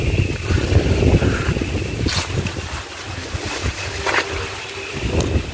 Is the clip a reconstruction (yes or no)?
no